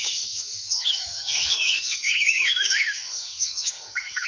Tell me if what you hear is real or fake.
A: fake